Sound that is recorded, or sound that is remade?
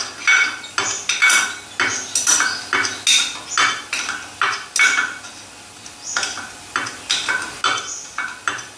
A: recorded